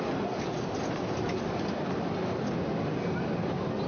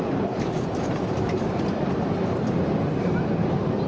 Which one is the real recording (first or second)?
first